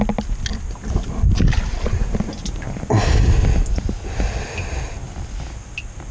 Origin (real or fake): real